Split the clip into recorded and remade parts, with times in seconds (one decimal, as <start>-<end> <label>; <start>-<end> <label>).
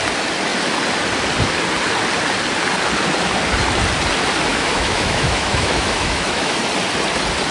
0.0-4.5 recorded; 4.5-6.6 remade; 6.6-7.5 recorded